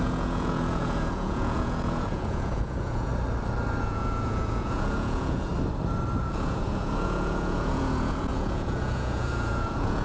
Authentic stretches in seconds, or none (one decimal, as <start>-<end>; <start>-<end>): 3.1-3.8; 5.5-6.2